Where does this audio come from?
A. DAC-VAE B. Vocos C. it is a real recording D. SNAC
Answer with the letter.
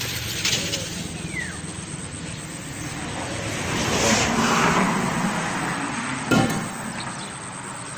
C